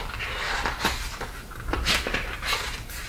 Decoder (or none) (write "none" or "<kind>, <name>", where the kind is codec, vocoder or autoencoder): none